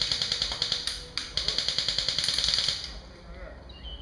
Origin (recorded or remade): recorded